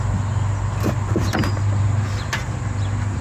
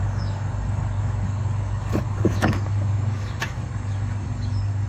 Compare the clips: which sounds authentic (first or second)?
first